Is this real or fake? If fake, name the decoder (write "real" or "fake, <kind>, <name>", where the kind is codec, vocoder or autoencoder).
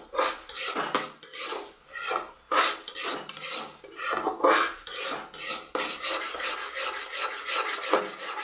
real